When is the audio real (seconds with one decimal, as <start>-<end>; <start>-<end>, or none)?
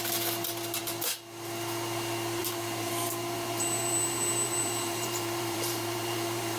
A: 0.0-2.4